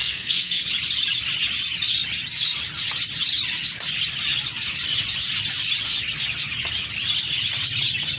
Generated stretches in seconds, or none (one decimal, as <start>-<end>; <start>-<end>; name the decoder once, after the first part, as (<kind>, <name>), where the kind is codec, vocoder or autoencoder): 0.0-0.6 (codec, SNAC)